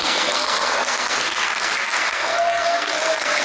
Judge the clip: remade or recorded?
remade